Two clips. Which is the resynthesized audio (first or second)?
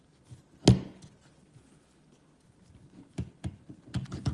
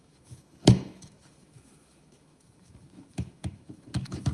second